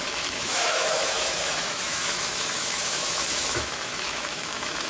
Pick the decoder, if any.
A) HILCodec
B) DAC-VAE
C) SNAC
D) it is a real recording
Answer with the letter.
B